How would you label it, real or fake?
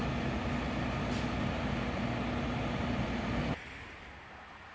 real